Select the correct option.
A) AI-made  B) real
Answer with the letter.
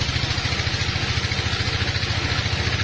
B